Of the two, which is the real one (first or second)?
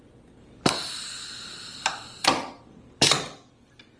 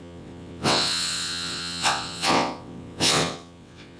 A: first